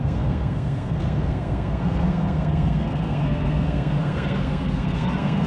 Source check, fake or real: fake